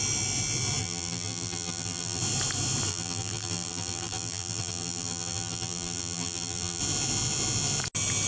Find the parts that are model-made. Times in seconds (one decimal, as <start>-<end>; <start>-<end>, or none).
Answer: 0.8-2.2; 2.9-6.8